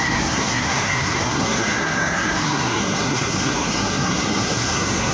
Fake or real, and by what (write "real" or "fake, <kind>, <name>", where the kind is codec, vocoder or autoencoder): fake, codec, SNAC